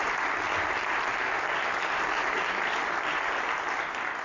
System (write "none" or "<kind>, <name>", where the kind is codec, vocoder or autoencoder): none